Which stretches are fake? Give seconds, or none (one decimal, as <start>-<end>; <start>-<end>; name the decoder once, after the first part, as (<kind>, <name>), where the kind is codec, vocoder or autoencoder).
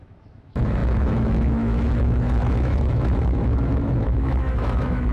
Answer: 0.0-5.1 (autoencoder, DAC-VAE)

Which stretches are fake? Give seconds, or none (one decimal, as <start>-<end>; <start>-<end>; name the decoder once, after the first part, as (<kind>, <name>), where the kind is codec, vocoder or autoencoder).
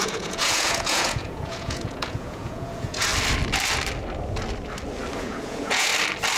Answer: 0.0-3.1 (vocoder, Vocos); 5.2-5.9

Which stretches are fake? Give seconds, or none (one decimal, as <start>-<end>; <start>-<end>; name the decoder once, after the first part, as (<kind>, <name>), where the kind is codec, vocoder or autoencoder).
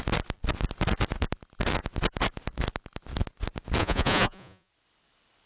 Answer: 3.8-4.7 (vocoder, Vocos)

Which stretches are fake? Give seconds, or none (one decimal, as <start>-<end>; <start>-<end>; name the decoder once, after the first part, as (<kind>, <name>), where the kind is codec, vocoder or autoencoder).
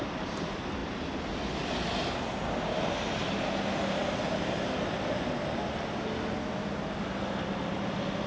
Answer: 0.0-3.2 (vocoder, BigVGAN v2); 7.6-8.3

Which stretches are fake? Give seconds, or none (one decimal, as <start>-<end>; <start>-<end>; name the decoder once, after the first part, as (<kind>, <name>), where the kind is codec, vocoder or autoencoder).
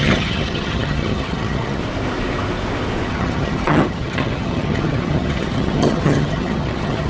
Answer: 0.0-1.8 (vocoder, HiFi-GAN); 3.1-7.1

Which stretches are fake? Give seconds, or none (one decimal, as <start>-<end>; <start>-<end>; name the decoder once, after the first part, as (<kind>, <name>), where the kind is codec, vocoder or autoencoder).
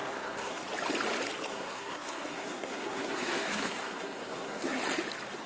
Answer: 0.0-0.6 (codec, SNAC); 1.5-4.8